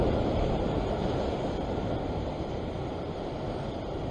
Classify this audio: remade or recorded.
remade